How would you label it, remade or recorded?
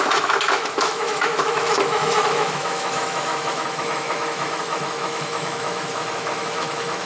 remade